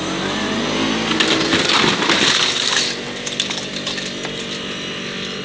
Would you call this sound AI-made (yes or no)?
no